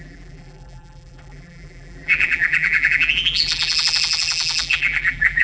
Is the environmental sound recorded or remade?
remade